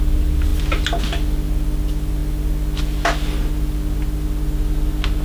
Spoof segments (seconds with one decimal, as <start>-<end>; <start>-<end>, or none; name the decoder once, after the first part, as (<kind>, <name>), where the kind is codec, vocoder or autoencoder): none